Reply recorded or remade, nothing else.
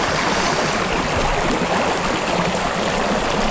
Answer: recorded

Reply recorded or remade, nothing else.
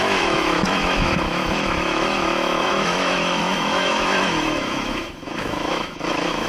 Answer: remade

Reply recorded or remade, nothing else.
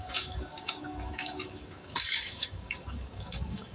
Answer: remade